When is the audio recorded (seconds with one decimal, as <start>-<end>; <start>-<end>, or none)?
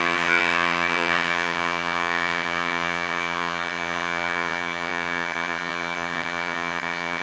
none